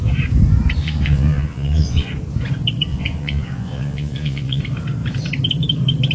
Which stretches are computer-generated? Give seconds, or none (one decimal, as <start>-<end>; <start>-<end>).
0.8-2.1; 2.9-4.6